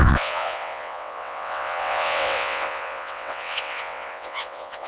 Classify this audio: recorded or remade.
remade